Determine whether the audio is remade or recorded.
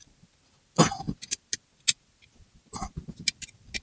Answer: recorded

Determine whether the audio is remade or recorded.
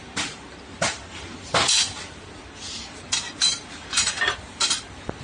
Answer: recorded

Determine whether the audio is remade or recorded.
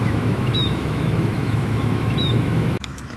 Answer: remade